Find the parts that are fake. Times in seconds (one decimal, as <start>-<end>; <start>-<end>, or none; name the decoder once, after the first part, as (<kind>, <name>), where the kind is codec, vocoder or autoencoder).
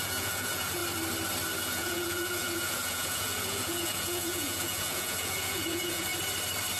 0.0-0.8 (vocoder, Vocos); 1.6-6.1